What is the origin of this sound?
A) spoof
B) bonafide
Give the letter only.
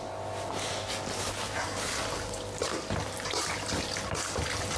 B